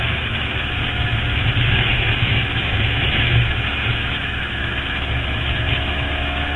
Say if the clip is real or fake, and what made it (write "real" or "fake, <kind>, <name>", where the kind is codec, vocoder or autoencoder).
fake, autoencoder, DAC-VAE